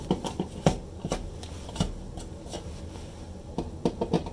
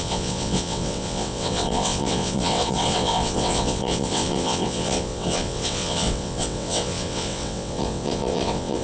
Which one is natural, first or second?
first